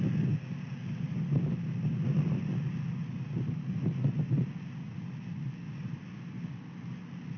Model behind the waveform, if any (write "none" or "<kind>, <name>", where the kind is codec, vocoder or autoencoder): none